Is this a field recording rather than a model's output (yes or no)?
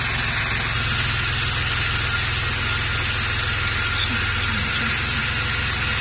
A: yes